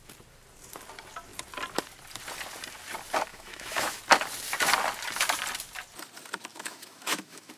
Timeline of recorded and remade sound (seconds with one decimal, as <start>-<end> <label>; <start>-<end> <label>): 0.0-3.3 recorded; 3.3-4.0 remade; 4.0-6.5 recorded; 6.5-7.6 remade